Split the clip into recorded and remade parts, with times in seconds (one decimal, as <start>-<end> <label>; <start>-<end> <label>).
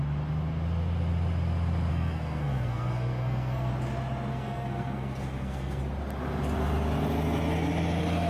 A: 0.0-1.9 recorded; 1.9-3.7 remade; 3.7-4.3 recorded; 4.3-5.8 remade; 5.8-8.3 recorded